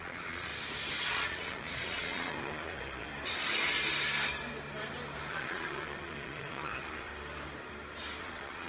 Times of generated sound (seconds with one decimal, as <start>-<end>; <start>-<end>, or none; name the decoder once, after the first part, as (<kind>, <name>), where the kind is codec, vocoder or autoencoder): 0.0-0.5 (vocoder, Vocos); 1.0-3.1; 5.3-7.1; 8.2-8.7